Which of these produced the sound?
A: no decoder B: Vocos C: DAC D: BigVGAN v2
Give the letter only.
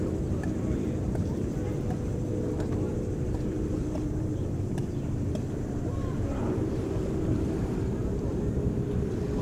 D